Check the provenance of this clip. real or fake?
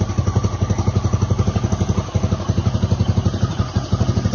real